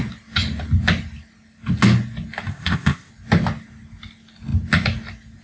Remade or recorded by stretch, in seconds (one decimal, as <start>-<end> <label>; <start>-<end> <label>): 0.0-2.5 recorded; 2.5-3.1 remade; 3.1-5.4 recorded